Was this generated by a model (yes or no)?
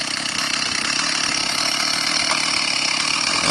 no